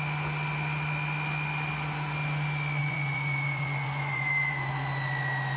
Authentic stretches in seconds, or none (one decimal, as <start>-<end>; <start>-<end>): 0.0-2.8; 4.7-5.6

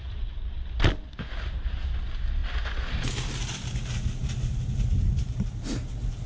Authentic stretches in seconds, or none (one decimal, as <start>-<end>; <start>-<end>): 0.0-6.3

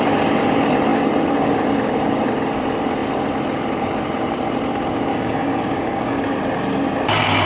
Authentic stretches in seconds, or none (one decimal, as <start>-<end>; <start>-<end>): 0.0-5.1; 6.2-7.5

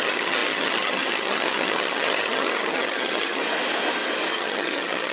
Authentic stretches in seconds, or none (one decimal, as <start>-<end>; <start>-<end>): 3.4-4.3

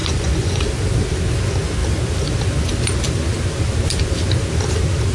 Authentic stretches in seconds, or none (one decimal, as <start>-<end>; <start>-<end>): 0.6-5.1

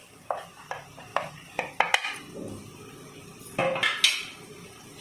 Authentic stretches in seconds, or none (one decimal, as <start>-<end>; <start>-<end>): 0.0-0.6; 1.1-3.2; 3.6-4.5

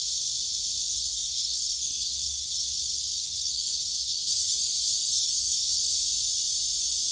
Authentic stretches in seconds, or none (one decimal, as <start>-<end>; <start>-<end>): 0.0-0.9; 2.6-3.2; 6.0-7.1